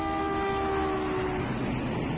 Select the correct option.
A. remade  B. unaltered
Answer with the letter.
B